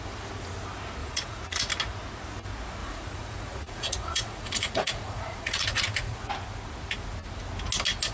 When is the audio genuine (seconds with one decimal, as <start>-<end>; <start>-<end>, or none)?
0.0-1.0; 1.7-2.8; 6.3-8.1